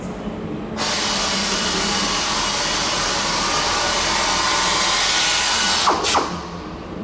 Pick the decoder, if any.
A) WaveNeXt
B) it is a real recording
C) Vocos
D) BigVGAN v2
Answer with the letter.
B